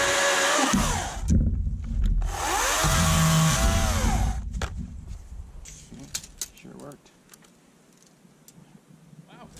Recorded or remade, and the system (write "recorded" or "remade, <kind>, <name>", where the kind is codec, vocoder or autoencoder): recorded